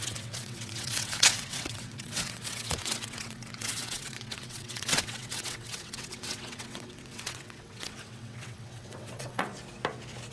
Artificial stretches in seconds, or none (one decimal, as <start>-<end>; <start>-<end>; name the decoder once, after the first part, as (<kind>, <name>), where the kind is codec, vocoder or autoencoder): 0.0-9.5 (vocoder, WaveNeXt)